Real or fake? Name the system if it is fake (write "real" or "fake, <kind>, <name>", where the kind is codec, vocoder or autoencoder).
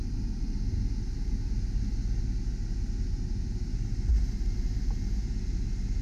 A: real